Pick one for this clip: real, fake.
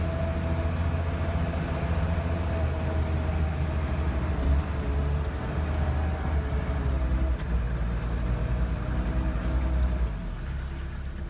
real